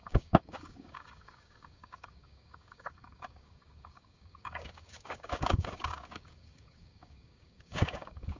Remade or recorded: remade